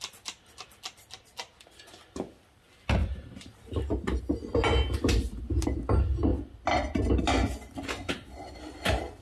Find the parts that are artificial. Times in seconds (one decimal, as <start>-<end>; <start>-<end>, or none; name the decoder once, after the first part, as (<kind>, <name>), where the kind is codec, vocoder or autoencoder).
3.0-4.2 (vocoder, BigVGAN v2)